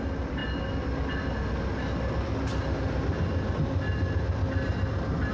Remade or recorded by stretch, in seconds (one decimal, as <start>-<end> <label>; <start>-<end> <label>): 0.0-5.3 recorded